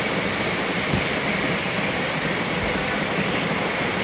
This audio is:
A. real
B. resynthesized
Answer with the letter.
B